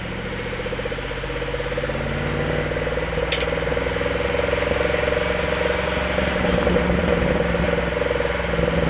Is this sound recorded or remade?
recorded